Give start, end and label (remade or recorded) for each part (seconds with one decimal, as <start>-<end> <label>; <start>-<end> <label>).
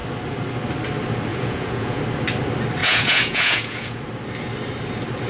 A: 0.0-1.3 recorded; 1.3-2.0 remade; 2.0-2.8 recorded; 2.8-4.0 remade; 4.0-5.3 recorded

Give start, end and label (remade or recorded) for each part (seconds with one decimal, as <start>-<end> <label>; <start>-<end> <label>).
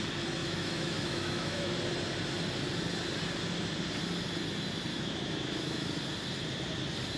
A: 0.0-0.4 recorded; 0.4-1.7 remade; 1.7-4.9 recorded; 4.9-5.9 remade; 5.9-7.2 recorded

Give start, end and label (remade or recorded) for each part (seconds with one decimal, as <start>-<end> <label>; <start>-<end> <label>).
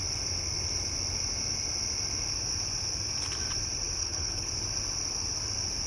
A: 0.0-4.0 recorded; 4.0-4.5 remade; 4.5-5.9 recorded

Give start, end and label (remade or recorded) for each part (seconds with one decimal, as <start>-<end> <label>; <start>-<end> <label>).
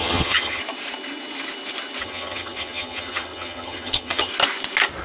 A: 0.0-0.6 remade; 0.6-2.0 recorded; 2.0-4.3 remade; 4.3-5.0 recorded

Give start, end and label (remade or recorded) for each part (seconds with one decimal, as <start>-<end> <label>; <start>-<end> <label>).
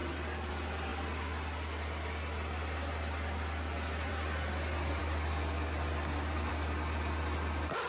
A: 0.0-7.9 recorded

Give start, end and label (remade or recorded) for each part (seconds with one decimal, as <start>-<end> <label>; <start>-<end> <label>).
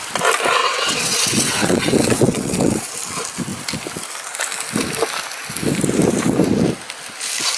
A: 0.0-0.6 recorded; 0.6-2.9 remade; 2.9-7.6 recorded